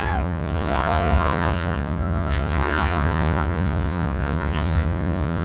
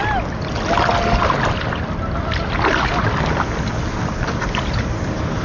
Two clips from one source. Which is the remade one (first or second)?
first